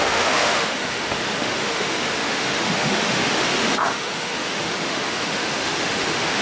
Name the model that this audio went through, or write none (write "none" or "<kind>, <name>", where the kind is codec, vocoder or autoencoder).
autoencoder, DAC-VAE